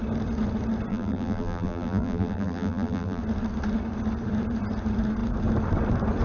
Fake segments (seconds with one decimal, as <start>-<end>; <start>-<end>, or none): 0.9-3.2